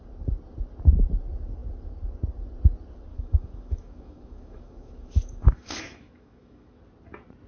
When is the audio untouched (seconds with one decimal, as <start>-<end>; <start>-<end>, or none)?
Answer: 0.0-3.1; 6.8-7.5

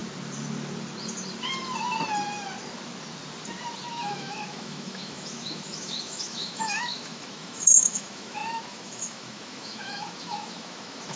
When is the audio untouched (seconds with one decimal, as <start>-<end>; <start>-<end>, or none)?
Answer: 0.0-3.9

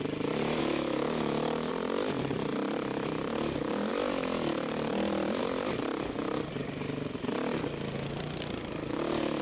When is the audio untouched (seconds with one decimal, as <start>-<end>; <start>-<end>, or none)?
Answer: 0.0-0.6; 1.7-9.4

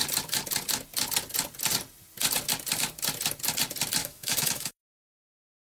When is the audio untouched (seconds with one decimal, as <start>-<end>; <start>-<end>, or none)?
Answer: 0.0-4.0; 5.1-5.7

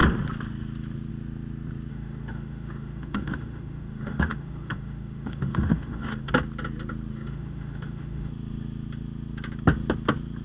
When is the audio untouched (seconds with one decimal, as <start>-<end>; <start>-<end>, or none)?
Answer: 0.0-1.9; 6.3-7.1; 8.3-10.4

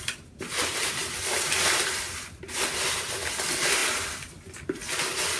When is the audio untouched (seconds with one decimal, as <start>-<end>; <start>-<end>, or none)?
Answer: 0.0-5.4